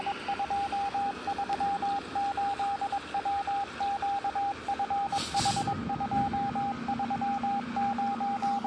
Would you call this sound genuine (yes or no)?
yes